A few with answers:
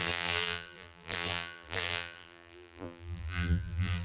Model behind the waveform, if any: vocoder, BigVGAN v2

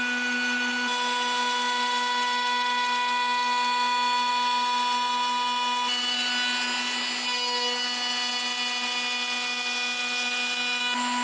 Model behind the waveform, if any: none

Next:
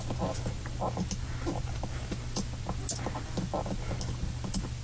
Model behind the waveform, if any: none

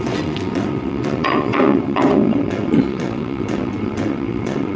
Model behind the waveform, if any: vocoder, WaveNeXt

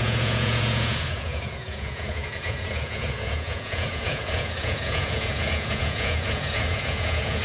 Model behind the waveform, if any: vocoder, Vocos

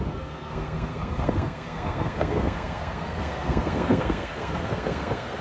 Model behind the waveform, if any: codec, SNAC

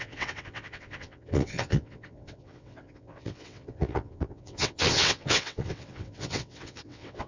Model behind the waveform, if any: vocoder, WaveNeXt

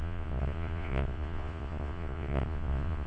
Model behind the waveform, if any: vocoder, Vocos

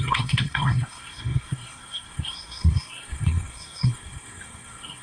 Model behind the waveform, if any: codec, SNAC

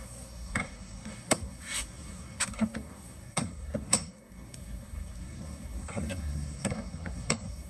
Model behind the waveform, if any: codec, SNAC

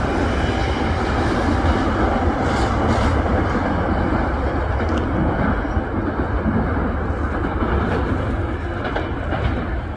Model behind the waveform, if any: none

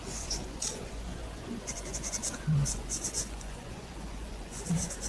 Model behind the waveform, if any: vocoder, Vocos